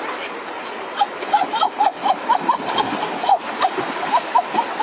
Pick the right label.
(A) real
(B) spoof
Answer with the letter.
A